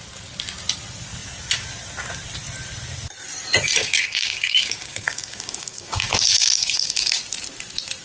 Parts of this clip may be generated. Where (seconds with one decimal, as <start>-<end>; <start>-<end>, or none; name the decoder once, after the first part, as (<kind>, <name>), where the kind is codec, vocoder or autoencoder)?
3.8-7.2 (codec, DAC)